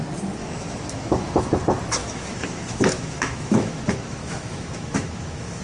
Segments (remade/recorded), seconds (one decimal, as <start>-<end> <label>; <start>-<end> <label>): 0.0-0.4 recorded; 0.4-1.6 remade; 1.6-2.0 recorded; 2.0-5.6 remade